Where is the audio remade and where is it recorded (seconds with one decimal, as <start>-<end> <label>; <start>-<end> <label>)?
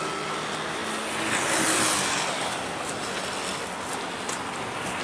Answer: 0.0-5.0 recorded